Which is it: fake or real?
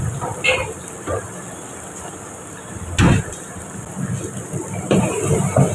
real